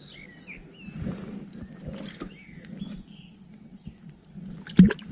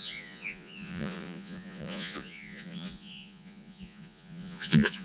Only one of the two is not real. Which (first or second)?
second